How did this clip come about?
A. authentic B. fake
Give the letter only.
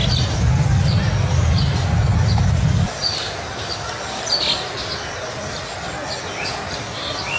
A